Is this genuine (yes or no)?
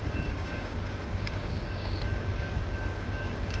no